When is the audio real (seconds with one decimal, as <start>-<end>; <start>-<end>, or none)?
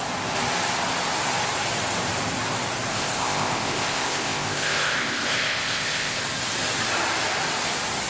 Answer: 0.0-2.9; 6.2-8.1